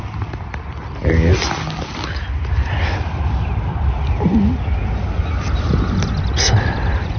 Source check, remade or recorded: recorded